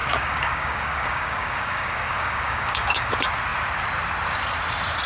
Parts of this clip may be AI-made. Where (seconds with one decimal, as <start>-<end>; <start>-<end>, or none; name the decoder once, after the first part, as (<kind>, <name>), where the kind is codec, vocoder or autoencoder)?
0.0-3.1 (codec, DAC)